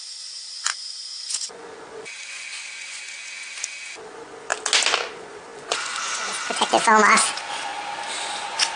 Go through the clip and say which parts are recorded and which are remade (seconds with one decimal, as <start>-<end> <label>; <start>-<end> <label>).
0.0-4.5 remade; 4.5-5.1 recorded; 5.1-7.7 remade; 7.7-8.2 recorded; 8.2-8.8 remade